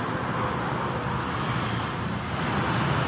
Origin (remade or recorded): recorded